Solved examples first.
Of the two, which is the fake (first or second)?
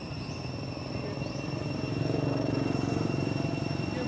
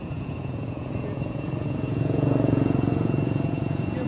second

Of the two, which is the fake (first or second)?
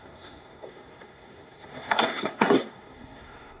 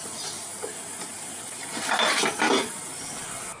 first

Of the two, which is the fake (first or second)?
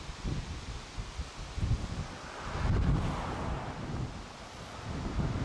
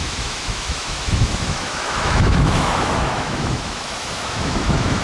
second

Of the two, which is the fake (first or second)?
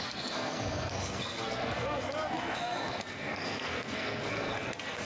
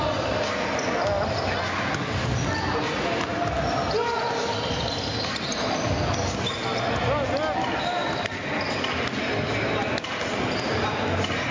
first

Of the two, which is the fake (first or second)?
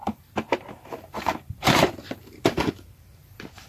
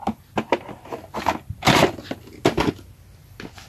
first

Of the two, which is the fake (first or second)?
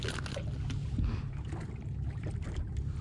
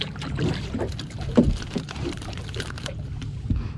second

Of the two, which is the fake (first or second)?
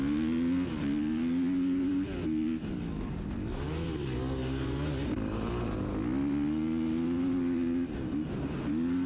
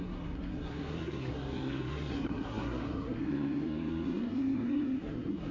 second